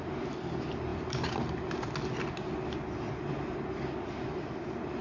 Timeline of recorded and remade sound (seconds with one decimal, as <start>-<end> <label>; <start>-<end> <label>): 0.0-5.0 recorded